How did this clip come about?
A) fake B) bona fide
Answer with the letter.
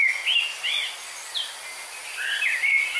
B